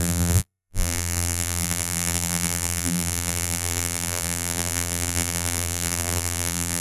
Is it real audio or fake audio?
fake